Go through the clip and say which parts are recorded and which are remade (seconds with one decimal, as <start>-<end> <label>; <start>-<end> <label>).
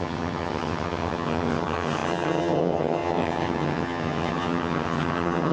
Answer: 0.0-5.5 remade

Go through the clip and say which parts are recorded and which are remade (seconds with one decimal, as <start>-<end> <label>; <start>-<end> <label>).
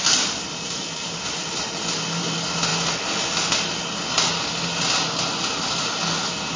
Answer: 0.0-6.6 recorded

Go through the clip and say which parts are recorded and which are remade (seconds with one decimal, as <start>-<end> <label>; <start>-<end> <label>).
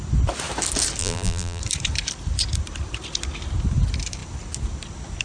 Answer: 0.0-1.0 recorded; 1.0-1.6 remade; 1.6-5.2 recorded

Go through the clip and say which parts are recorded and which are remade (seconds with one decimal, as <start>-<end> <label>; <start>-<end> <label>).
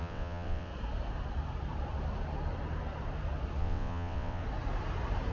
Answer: 0.0-0.7 remade; 0.7-3.6 recorded; 3.6-4.4 remade; 4.4-5.3 recorded